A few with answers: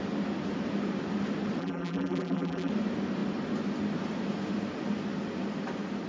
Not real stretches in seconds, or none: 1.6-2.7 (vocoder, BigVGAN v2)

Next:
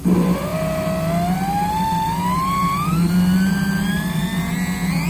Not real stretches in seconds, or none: 4.2-5.1 (vocoder, Vocos)